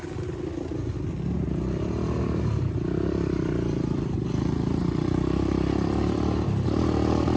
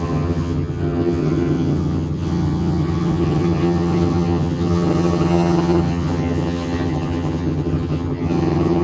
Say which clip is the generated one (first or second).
second